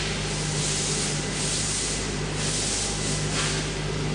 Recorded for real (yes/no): yes